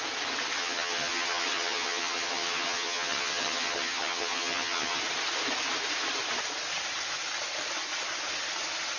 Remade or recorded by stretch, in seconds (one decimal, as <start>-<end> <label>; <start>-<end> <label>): 0.0-0.6 recorded; 0.6-5.0 remade; 5.0-9.0 recorded